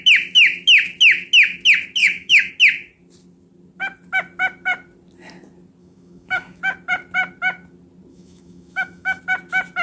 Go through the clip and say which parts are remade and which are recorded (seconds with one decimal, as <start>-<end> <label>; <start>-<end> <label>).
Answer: 0.0-2.0 recorded; 2.0-2.5 remade; 2.5-5.8 recorded; 5.8-6.6 remade; 6.6-8.1 recorded; 8.1-9.2 remade; 9.2-9.8 recorded